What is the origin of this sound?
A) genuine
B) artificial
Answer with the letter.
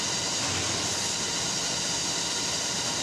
A